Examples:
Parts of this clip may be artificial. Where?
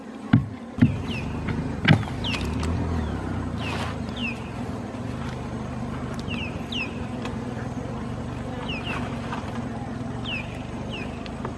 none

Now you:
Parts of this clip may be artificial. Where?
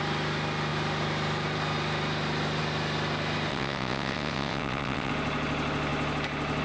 3.5-5.1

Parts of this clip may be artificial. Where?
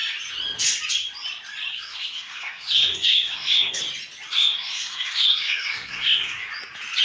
1.7-3.8; 4.3-6.5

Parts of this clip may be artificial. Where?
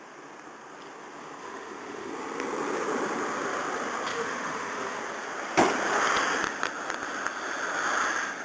1.4-2.1; 4.1-5.0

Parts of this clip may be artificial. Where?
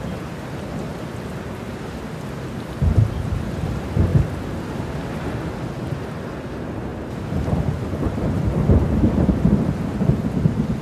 0.9-2.1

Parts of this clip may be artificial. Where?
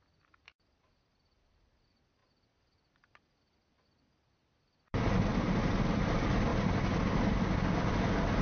none